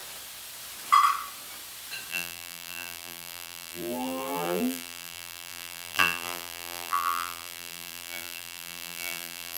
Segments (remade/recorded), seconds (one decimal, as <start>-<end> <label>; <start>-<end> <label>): 0.0-2.1 recorded; 2.1-9.6 remade